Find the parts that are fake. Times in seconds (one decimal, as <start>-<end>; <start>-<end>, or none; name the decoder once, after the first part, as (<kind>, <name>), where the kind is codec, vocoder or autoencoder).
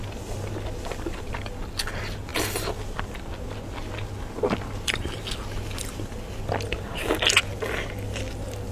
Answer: none